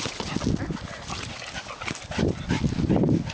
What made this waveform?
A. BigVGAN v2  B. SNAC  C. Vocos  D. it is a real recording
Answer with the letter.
D